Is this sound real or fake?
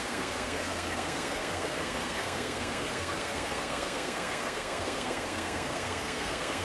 fake